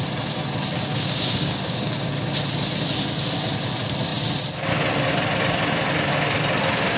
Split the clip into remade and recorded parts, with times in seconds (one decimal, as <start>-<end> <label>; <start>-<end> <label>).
0.0-0.9 recorded; 0.9-2.0 remade; 2.0-7.0 recorded